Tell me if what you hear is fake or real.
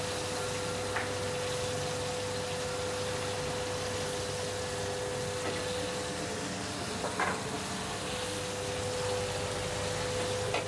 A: real